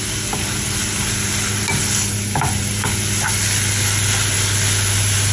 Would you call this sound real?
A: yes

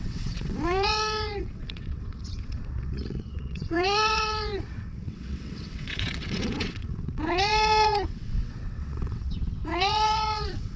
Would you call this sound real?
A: no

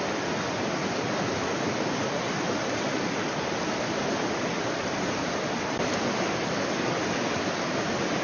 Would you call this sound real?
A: yes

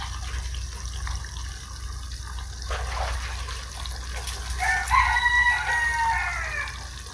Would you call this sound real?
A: yes